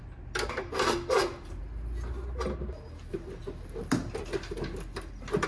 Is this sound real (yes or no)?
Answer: yes